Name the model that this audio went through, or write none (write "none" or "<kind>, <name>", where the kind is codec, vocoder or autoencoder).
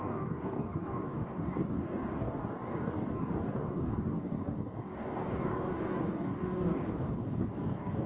codec, DAC